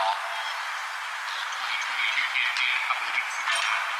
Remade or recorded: recorded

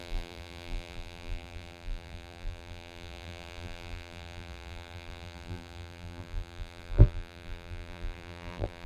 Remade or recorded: remade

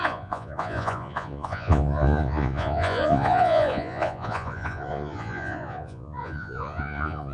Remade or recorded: remade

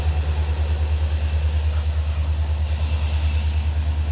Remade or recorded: recorded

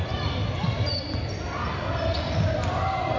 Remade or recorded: recorded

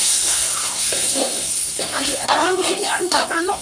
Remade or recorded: remade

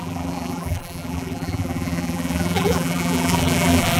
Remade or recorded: remade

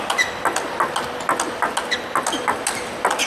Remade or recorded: recorded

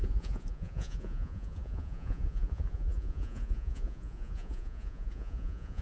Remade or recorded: remade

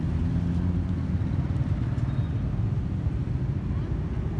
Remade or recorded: recorded